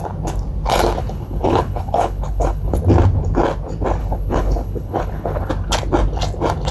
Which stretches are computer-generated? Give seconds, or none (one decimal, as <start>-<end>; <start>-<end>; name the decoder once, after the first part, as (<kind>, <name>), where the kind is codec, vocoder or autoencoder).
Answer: 1.0-2.8 (codec, HILCodec); 4.0-5.5